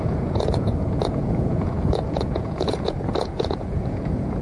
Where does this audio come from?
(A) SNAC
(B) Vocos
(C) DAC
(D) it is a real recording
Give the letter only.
B